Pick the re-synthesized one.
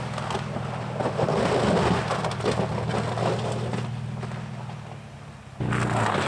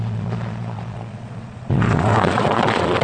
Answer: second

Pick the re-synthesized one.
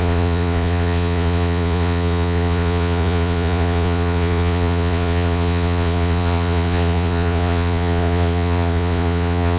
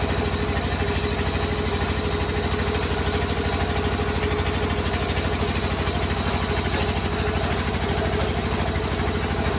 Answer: first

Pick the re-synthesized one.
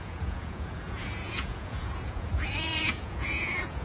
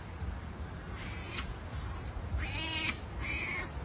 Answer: first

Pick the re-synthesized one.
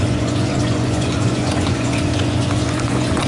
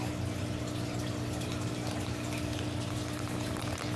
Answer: first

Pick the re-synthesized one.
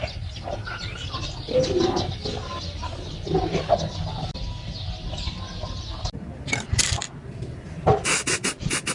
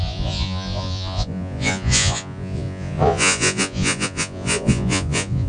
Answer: second